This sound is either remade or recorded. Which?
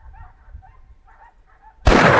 recorded